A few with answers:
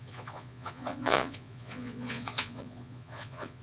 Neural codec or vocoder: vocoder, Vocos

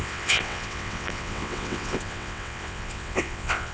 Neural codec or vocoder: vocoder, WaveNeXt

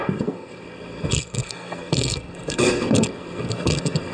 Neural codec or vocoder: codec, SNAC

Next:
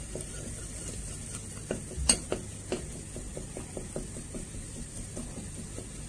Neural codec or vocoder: none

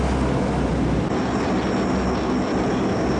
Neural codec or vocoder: none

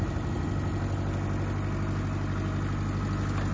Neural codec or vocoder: none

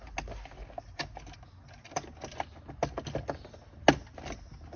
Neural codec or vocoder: none